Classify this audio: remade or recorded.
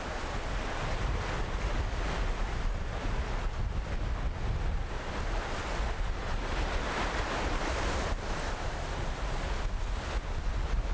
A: recorded